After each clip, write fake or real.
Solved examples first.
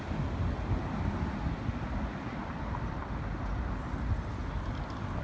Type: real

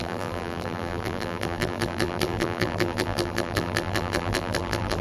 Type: fake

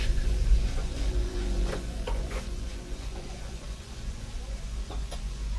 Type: fake